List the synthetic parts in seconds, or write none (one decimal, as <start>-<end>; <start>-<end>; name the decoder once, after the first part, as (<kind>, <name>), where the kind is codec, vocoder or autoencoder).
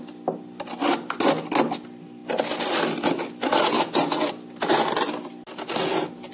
none